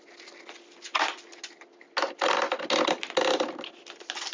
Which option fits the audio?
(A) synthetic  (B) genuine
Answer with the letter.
B